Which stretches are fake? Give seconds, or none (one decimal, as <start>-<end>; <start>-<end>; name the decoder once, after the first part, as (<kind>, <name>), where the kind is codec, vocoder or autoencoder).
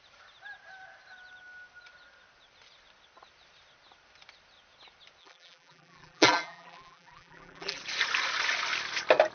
5.2-7.8 (vocoder, BigVGAN v2)